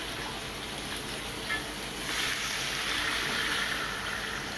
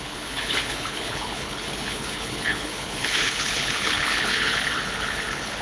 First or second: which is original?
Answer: first